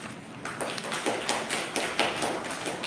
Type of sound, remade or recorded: recorded